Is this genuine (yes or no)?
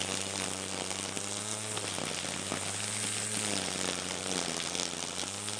yes